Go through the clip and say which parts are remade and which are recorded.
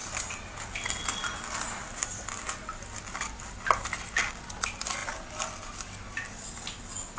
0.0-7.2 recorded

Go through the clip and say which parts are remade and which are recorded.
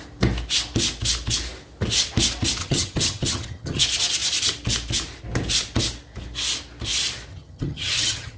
0.0-2.6 recorded; 2.6-3.8 remade; 3.8-7.3 recorded; 7.3-8.4 remade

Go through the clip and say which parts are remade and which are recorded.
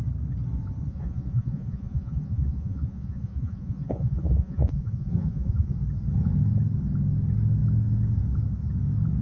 0.0-0.9 recorded; 0.9-5.7 remade; 5.7-9.2 recorded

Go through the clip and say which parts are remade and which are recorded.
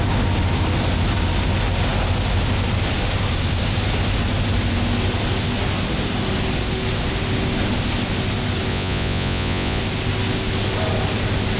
0.0-8.7 recorded; 8.7-9.8 remade; 9.8-11.6 recorded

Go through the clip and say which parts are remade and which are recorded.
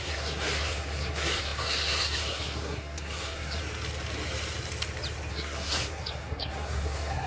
0.0-3.6 remade; 3.6-5.3 recorded; 5.3-7.3 remade